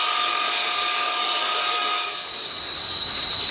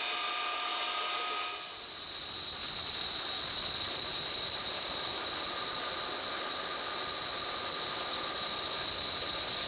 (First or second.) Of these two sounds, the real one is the second